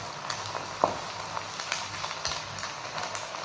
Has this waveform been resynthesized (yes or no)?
no